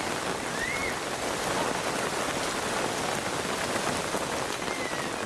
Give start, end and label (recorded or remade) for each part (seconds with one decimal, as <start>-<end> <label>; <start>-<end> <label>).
0.0-5.3 recorded